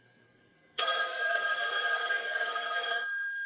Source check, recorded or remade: remade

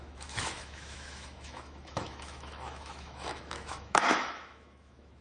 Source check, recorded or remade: remade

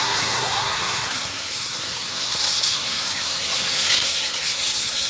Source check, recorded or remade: remade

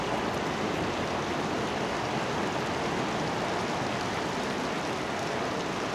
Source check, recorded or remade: recorded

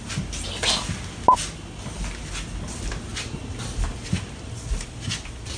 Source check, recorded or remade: recorded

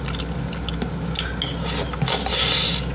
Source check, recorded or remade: recorded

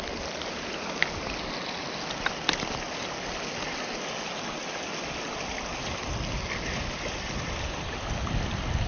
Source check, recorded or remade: recorded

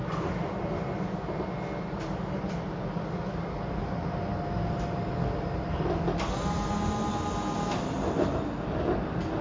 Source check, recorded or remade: recorded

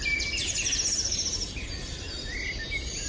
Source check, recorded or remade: recorded